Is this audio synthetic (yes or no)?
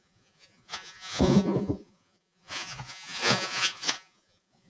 yes